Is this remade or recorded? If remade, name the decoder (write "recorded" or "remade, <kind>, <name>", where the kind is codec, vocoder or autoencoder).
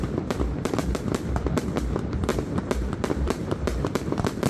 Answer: remade, vocoder, BigVGAN v2